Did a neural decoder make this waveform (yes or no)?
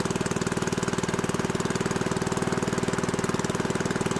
no